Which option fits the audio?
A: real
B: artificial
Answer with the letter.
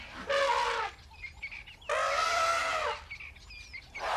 A